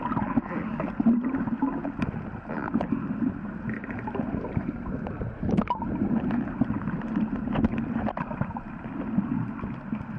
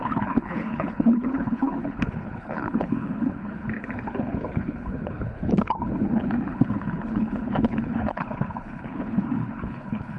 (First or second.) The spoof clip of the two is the second